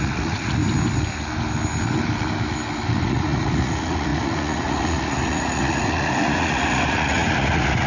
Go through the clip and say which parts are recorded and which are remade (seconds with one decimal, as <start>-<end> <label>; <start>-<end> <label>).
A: 0.0-0.6 remade; 0.6-3.0 recorded; 3.0-7.9 remade